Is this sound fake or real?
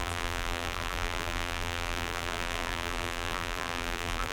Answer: fake